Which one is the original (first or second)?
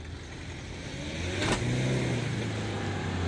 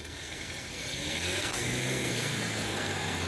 first